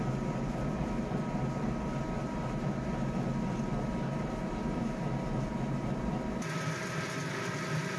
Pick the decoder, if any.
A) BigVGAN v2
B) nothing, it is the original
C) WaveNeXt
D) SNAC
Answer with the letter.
B